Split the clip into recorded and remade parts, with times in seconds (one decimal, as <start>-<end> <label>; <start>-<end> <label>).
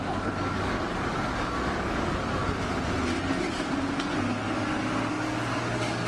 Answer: 0.0-2.4 remade; 2.4-5.1 recorded; 5.1-6.1 remade